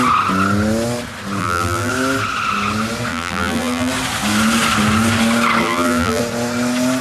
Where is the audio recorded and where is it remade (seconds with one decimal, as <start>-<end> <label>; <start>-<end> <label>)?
0.0-1.4 recorded; 1.4-1.9 remade; 1.9-3.1 recorded; 3.1-3.9 remade; 3.9-5.6 recorded; 5.6-6.2 remade; 6.2-7.0 recorded